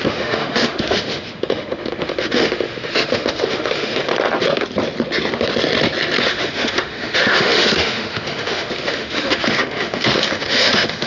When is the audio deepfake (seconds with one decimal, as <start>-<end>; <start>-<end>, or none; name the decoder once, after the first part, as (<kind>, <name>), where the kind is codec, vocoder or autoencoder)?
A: 0.0-4.1 (autoencoder, DAC-VAE); 6.2-11.1

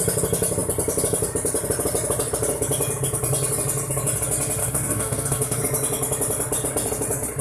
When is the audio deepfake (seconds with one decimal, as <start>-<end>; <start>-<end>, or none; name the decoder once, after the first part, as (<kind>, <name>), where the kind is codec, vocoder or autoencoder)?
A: 4.6-5.6 (codec, SNAC)

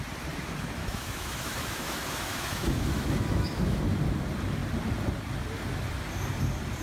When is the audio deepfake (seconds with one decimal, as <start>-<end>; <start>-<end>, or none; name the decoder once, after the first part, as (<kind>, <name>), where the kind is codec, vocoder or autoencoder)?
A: 0.8-3.8 (autoencoder, DAC-VAE)

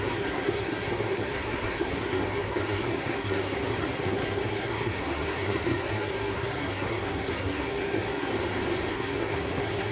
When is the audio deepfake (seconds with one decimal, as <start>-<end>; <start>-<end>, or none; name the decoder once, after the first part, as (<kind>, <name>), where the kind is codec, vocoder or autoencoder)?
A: 0.0-8.3 (codec, SNAC); 8.9-9.9

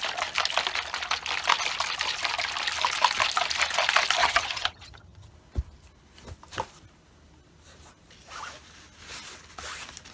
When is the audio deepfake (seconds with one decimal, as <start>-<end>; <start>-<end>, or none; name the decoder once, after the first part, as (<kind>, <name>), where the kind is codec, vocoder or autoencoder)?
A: 4.2-5.3 (vocoder, HiFi-GAN)

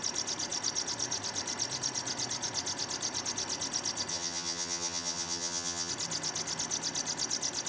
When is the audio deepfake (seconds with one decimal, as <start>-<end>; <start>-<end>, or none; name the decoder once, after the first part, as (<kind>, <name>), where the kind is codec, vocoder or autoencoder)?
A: 4.1-5.9 (vocoder, HiFi-GAN)